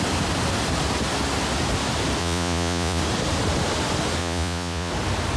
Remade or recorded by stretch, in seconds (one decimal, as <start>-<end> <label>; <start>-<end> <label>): 0.0-2.2 recorded; 2.2-3.0 remade; 3.0-4.2 recorded; 4.2-4.9 remade; 4.9-5.4 recorded